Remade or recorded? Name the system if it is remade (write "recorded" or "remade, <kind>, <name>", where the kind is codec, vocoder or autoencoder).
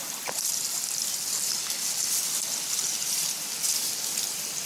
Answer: recorded